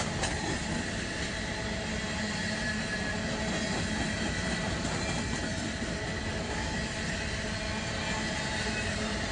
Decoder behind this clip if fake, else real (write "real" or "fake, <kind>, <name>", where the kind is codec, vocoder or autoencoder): real